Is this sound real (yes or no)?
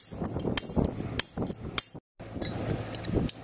yes